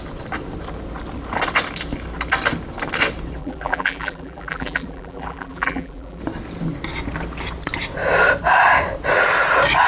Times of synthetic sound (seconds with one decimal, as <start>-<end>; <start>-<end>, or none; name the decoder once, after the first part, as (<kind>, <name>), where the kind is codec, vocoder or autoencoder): 3.4-6.2 (vocoder, BigVGAN v2)